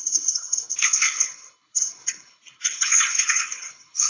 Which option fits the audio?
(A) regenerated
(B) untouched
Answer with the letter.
A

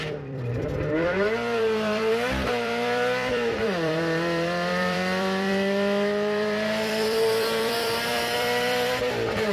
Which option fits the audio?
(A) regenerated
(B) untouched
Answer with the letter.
A